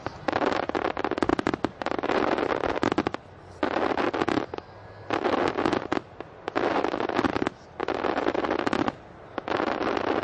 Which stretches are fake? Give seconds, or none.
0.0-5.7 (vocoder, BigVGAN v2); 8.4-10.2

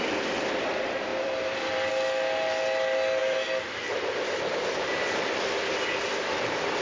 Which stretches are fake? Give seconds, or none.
1.1-1.9 (vocoder, BigVGAN v2)

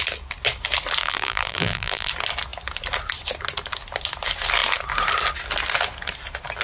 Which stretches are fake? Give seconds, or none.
1.0-2.1 (vocoder, BigVGAN v2)